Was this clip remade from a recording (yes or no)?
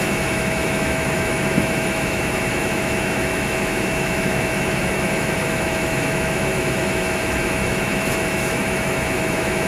yes